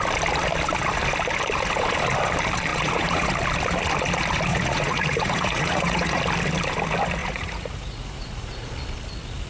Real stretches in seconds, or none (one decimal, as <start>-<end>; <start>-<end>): 0.0-2.7; 3.3-4.5; 6.2-7.2; 8.7-9.5